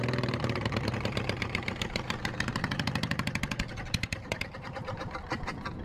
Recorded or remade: remade